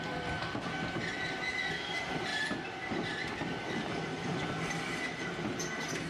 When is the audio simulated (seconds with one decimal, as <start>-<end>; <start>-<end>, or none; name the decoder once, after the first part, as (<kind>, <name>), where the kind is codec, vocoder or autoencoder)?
none